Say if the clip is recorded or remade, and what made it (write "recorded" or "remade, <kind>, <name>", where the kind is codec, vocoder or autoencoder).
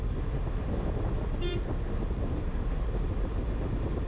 recorded